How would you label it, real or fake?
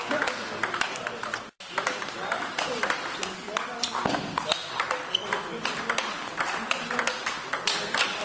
real